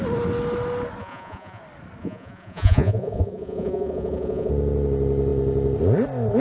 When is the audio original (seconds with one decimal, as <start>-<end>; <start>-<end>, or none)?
0.0-1.0; 1.6-2.0; 4.5-6.4